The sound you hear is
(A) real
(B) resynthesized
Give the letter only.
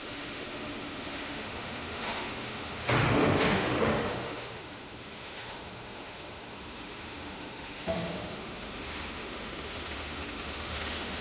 B